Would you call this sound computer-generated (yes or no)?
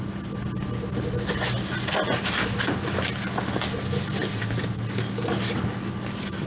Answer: no